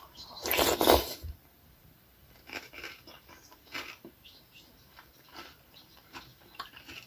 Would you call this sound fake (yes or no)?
yes